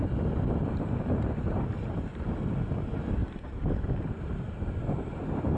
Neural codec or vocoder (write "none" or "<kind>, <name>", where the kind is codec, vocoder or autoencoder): none